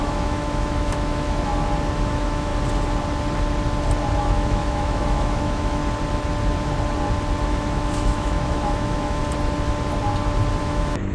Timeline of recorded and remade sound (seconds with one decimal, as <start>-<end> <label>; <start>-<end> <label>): 0.0-1.5 remade; 1.5-2.1 recorded; 2.1-2.5 remade; 2.5-4.2 recorded; 4.2-5.8 remade; 5.8-7.4 recorded; 7.4-9.2 remade; 9.2-10.6 recorded; 10.6-11.1 remade